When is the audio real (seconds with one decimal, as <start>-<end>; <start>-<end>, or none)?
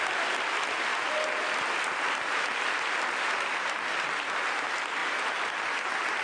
0.0-6.2